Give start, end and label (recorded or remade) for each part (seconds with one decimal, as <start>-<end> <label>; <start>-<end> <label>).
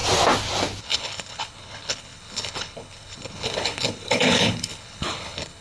0.0-0.8 recorded; 0.8-5.6 remade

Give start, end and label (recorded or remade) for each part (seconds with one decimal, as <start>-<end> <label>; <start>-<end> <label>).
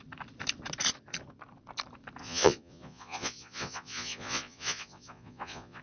0.0-2.2 recorded; 2.2-5.8 remade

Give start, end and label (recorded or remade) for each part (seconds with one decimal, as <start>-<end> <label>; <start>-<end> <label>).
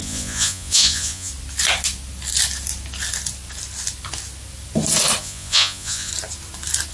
0.0-1.3 remade; 1.3-5.2 recorded; 5.2-6.1 remade; 6.1-6.9 recorded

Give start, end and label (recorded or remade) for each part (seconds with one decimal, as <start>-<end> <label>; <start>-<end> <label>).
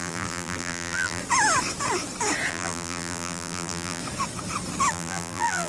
0.0-1.2 remade; 1.2-2.5 recorded; 2.5-4.0 remade; 4.0-4.9 recorded; 4.9-5.7 remade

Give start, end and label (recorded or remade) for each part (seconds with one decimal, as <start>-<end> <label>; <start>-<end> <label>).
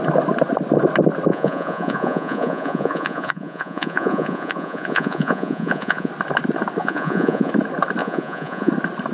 0.0-1.3 recorded; 1.3-6.1 remade; 6.1-6.8 recorded; 6.8-7.5 remade; 7.5-8.0 recorded; 8.0-8.7 remade; 8.7-9.1 recorded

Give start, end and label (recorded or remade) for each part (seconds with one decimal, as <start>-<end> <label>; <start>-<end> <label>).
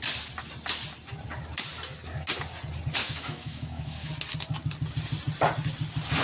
0.0-3.0 recorded; 3.0-4.1 remade; 4.1-6.2 recorded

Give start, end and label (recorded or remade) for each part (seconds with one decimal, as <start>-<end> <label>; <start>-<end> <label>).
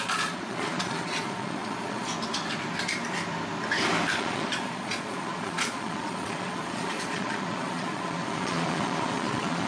0.0-2.1 remade; 2.1-4.2 recorded; 4.2-9.7 remade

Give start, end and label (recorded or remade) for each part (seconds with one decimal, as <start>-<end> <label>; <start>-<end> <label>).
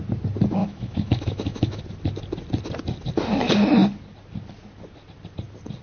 0.0-0.6 recorded; 0.6-1.8 remade; 1.8-5.8 recorded